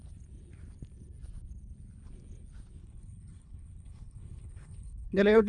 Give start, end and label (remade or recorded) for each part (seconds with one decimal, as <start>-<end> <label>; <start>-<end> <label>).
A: 0.0-2.8 recorded; 2.8-5.5 remade